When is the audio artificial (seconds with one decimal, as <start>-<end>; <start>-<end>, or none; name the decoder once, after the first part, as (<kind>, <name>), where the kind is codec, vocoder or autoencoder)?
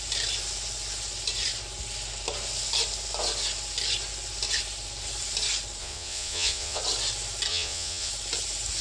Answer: 5.8-6.8 (vocoder, Vocos); 7.5-8.1